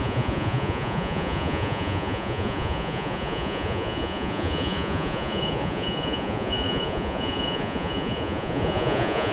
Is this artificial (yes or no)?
yes